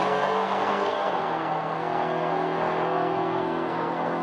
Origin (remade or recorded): remade